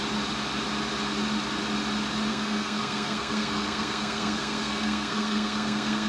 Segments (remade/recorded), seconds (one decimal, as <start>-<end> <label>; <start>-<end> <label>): 0.0-2.3 recorded; 2.3-6.1 remade